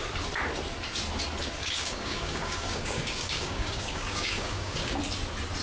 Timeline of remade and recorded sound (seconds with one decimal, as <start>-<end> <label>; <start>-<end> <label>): 0.0-1.6 recorded; 1.6-5.0 remade; 5.0-5.6 recorded

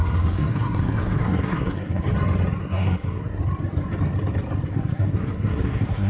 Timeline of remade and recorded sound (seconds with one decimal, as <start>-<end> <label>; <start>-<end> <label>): 0.0-2.0 remade; 2.0-2.6 recorded; 2.6-3.4 remade; 3.4-4.7 recorded; 4.7-6.1 remade

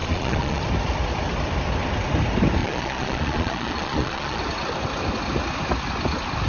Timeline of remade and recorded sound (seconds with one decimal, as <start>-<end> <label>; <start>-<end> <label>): 0.0-0.6 remade; 0.6-2.6 recorded; 2.6-4.4 remade; 4.4-6.5 recorded

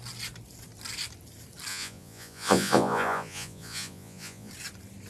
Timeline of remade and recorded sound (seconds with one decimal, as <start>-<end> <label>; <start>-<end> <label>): 0.0-1.7 recorded; 1.7-4.5 remade; 4.5-5.1 recorded